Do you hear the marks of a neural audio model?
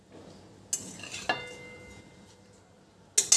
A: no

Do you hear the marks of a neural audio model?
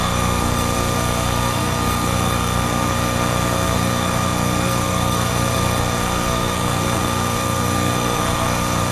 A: yes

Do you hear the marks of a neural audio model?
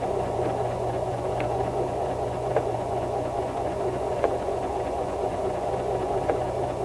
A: yes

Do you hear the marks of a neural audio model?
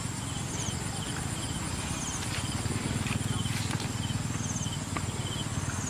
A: no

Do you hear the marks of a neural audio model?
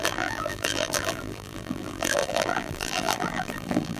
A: yes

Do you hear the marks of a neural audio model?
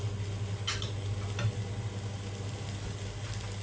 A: no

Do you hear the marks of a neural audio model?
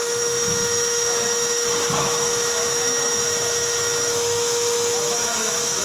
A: yes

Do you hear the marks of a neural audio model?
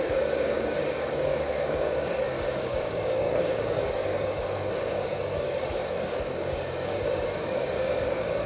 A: yes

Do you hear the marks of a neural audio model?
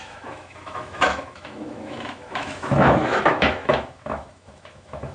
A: yes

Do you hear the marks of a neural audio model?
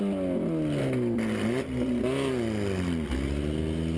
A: no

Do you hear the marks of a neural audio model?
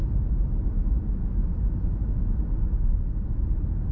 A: no